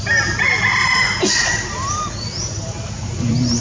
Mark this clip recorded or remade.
recorded